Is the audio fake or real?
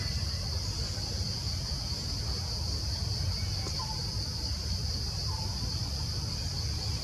real